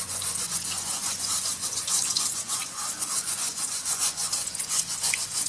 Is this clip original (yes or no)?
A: no